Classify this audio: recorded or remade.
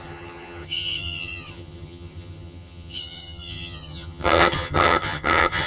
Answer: remade